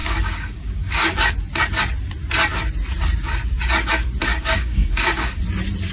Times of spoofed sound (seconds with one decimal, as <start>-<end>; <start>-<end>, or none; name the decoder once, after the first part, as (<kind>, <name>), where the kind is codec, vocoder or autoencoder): 0.0-1.3 (codec, DAC); 4.3-5.4